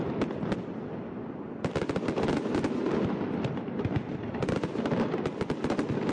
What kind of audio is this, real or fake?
fake